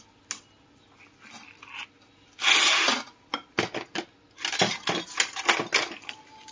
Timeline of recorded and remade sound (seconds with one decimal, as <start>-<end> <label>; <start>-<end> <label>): 0.0-6.5 recorded